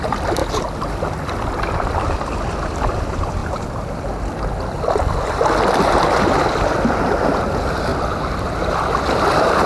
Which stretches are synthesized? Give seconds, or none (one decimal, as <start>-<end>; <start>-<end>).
0.0-3.4; 7.5-7.9; 8.7-9.7